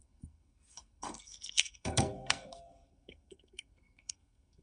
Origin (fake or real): fake